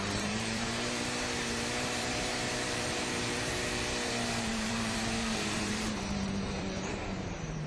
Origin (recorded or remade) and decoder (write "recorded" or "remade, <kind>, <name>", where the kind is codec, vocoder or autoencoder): remade, vocoder, BigVGAN v2